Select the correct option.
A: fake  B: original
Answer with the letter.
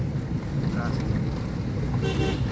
B